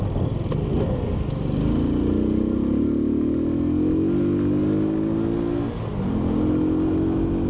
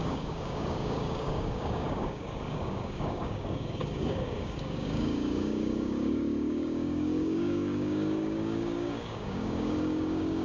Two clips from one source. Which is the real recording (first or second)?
first